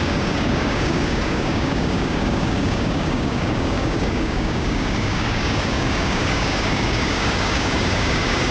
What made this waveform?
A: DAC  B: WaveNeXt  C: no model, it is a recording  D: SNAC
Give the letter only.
A